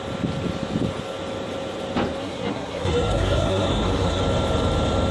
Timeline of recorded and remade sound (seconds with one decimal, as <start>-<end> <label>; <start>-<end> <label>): 0.0-2.2 recorded; 2.2-4.2 remade; 4.2-5.1 recorded